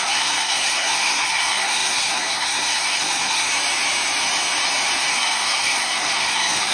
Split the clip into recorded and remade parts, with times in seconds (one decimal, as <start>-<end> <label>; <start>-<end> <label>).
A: 0.0-3.5 remade; 3.5-5.1 recorded; 5.1-6.7 remade